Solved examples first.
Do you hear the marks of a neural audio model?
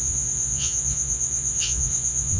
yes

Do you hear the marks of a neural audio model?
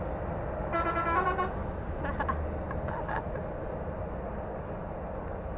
no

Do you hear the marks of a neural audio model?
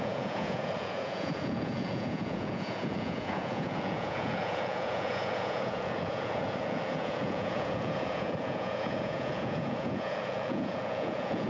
yes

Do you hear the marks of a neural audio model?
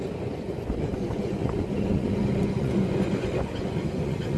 yes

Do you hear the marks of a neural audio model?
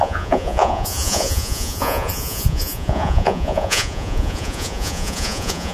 yes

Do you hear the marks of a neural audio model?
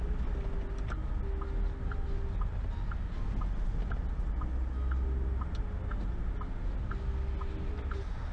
no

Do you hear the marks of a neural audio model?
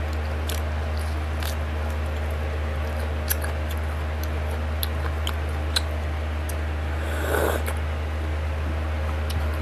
no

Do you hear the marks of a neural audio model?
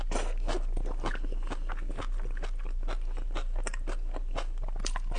no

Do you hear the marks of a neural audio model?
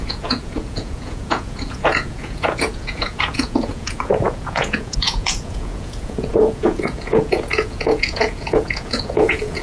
yes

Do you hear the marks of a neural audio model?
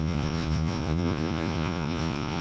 yes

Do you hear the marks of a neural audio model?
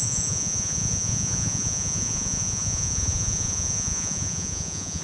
yes